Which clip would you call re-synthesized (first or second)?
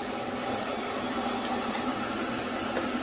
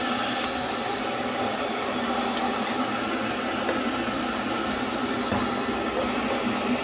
first